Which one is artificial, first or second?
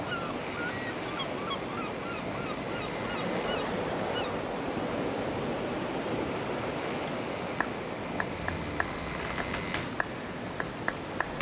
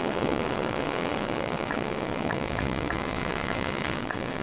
second